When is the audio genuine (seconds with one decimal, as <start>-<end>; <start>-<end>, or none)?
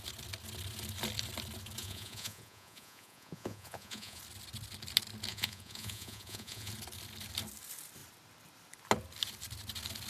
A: 0.0-1.8; 4.2-5.3; 6.7-10.1